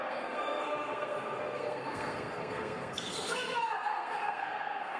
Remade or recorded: remade